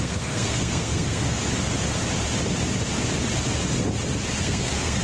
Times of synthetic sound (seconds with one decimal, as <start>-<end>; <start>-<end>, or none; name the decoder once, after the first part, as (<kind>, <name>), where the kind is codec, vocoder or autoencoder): 0.0-1.4 (codec, SNAC); 4.4-5.0